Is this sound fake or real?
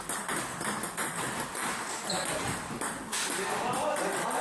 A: real